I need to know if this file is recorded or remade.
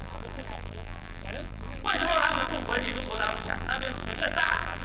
remade